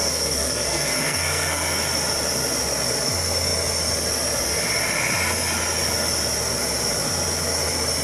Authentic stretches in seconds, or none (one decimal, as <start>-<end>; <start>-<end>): 1.8-8.0